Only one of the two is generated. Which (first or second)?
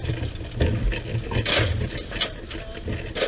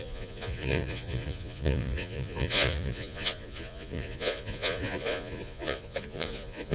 second